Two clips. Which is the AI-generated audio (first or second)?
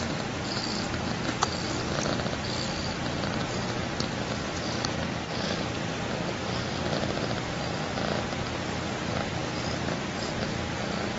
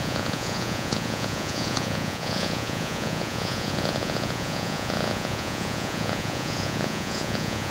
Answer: second